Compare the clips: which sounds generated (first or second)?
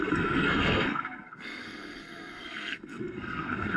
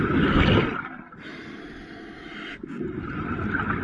first